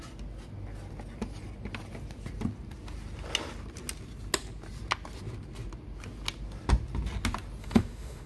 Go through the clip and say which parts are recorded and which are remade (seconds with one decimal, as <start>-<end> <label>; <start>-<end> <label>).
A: 0.0-7.6 recorded; 7.6-8.3 remade